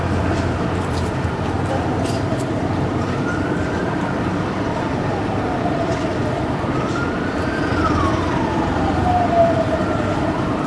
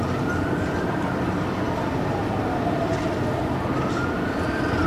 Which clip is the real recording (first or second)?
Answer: second